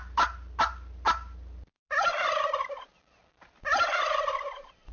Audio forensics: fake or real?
real